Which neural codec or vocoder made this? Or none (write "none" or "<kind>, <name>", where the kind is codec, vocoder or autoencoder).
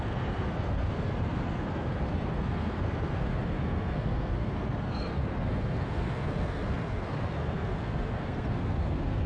codec, SNAC